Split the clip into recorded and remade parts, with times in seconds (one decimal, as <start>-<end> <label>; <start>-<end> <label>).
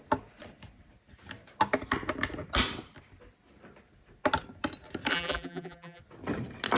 0.0-5.1 recorded; 5.1-6.0 remade; 6.0-6.8 recorded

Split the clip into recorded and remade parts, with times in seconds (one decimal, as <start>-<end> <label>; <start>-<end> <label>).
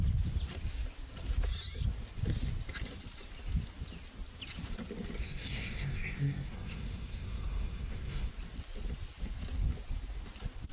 0.0-5.2 recorded; 5.2-8.3 remade; 8.3-10.7 recorded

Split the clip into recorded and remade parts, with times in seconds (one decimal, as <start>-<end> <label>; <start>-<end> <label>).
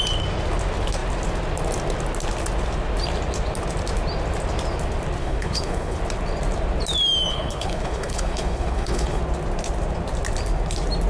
0.0-5.2 recorded; 5.2-6.0 remade; 6.0-7.3 recorded; 7.3-9.2 remade; 9.2-11.1 recorded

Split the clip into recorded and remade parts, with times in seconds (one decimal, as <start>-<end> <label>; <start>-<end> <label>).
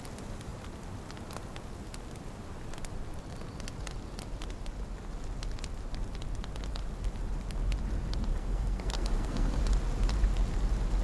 0.0-8.3 recorded; 8.3-9.6 remade; 9.6-11.0 recorded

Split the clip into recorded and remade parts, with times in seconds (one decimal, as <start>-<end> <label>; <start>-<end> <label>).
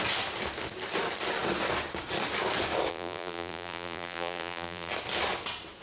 0.0-2.9 recorded; 2.9-4.9 remade; 4.9-5.8 recorded